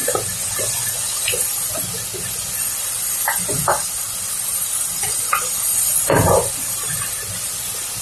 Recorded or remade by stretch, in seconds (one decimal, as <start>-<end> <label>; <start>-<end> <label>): 0.0-8.0 recorded